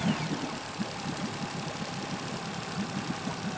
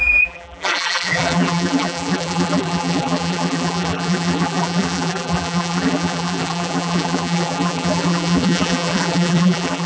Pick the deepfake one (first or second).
second